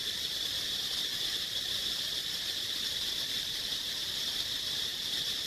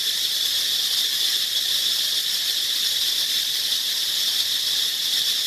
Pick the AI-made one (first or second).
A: first